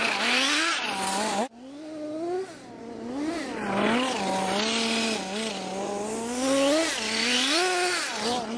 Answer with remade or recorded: recorded